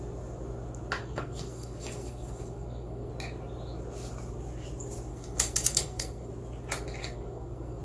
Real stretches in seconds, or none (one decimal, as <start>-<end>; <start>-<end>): 0.0-1.0; 3.1-5.1; 6.3-7.0